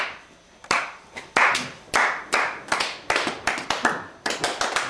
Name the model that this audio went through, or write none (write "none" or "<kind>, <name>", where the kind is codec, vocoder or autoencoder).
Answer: vocoder, BigVGAN v2